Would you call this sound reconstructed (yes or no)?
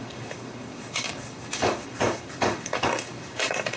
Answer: yes